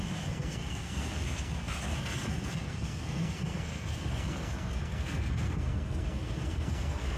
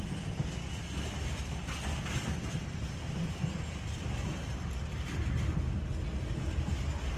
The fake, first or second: first